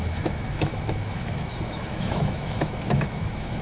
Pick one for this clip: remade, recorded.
remade